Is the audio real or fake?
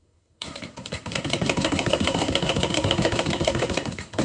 fake